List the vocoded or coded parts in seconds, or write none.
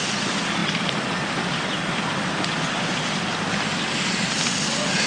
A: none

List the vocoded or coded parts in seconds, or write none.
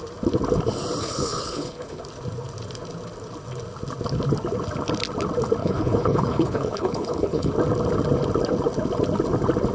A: 1.0-2.0 (codec, HILCodec); 5.6-7.5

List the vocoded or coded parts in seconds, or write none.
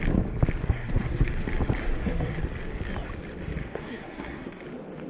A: 0.6-1.3 (codec, SNAC); 1.8-2.4; 3.6-4.6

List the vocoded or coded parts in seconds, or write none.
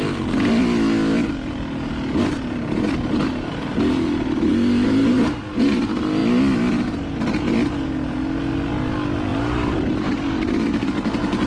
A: none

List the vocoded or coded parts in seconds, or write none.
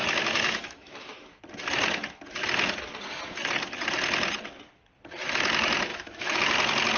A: 0.0-1.4 (autoencoder, DAC-VAE); 5.9-6.4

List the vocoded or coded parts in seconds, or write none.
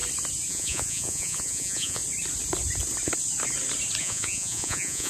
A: 0.5-2.0 (vocoder, Vocos); 4.0-5.1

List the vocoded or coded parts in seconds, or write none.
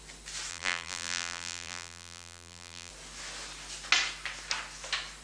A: 0.5-2.9 (vocoder, BigVGAN v2)